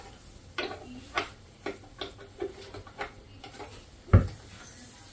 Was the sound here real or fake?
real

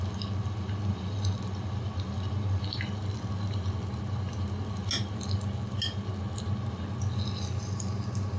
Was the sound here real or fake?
real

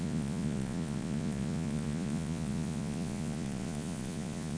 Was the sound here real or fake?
fake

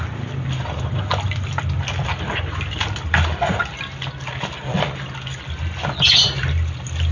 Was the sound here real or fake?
real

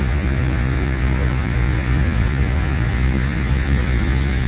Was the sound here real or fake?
fake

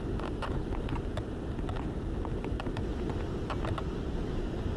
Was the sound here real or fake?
real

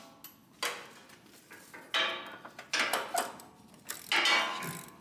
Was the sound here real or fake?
real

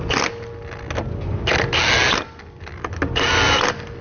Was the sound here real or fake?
real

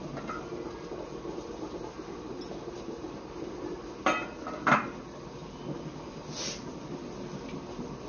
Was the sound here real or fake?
real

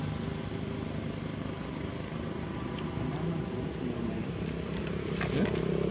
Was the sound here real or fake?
real